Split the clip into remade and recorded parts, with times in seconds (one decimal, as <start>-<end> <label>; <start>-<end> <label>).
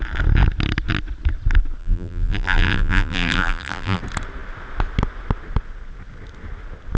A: 0.0-1.8 recorded; 1.8-4.0 remade; 4.0-7.0 recorded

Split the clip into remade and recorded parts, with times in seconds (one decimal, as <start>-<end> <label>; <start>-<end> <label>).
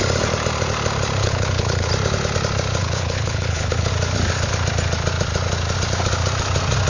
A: 0.0-1.2 recorded; 1.2-1.9 remade; 1.9-2.8 recorded; 2.8-3.9 remade; 3.9-6.9 recorded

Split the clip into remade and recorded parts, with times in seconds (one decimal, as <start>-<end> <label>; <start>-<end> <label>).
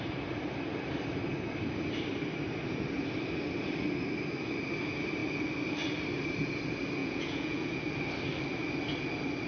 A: 0.0-7.0 recorded; 7.0-7.8 remade; 7.8-9.5 recorded